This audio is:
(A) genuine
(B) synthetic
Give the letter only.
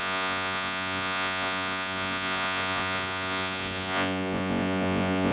B